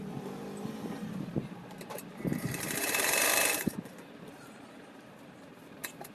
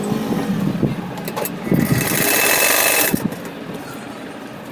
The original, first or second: second